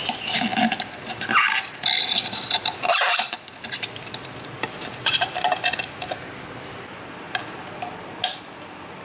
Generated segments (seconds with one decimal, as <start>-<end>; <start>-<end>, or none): none